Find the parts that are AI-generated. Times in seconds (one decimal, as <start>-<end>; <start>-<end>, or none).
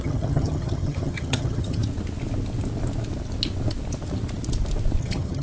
0.0-1.8; 5.0-5.4